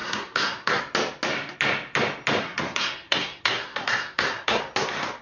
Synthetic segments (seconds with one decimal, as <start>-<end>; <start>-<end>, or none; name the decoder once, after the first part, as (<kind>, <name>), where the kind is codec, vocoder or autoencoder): 0.0-0.8 (codec, SNAC); 2.4-4.6